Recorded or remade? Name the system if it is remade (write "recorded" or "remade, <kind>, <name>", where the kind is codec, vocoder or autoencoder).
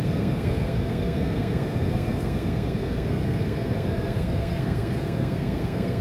remade, codec, SNAC